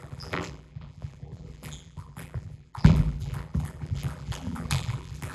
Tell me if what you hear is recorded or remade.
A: remade